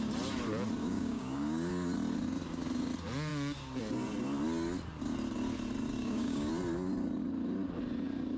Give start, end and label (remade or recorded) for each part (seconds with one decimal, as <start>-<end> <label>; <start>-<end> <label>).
0.0-0.8 recorded; 0.8-1.7 remade; 1.7-6.0 recorded; 6.0-6.5 remade; 6.5-8.4 recorded